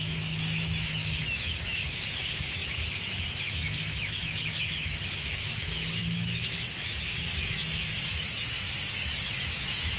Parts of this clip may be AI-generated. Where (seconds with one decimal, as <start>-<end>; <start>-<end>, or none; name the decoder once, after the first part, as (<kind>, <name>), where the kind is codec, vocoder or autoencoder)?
0.0-10.0 (autoencoder, DAC-VAE)